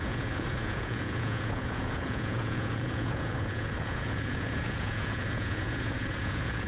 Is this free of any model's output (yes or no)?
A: no